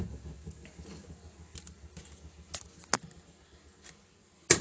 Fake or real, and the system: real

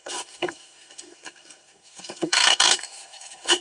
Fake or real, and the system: fake, codec, SNAC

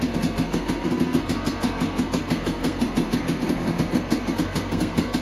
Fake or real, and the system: fake, codec, SNAC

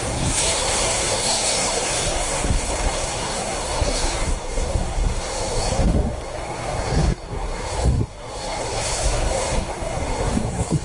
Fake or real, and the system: fake, codec, SNAC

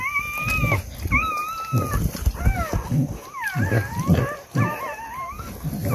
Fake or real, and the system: real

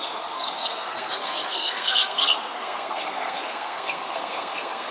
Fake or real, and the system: fake, codec, SNAC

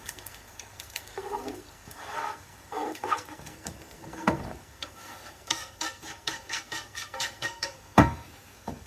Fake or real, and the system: fake, codec, SNAC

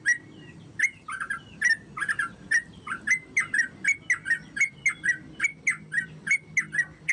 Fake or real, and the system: real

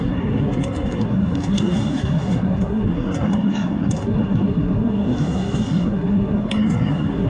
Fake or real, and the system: fake, codec, SNAC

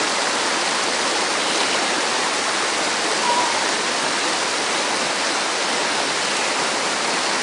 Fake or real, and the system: real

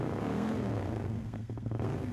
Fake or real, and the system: fake, codec, SNAC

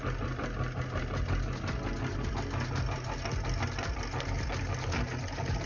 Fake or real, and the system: real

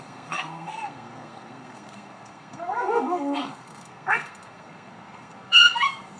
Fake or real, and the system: fake, codec, SNAC